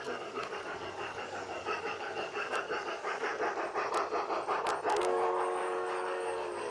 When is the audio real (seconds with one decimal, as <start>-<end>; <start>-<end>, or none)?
3.3-5.0